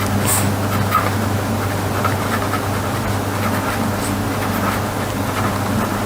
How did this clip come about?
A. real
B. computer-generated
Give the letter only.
A